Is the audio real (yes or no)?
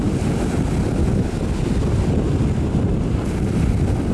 yes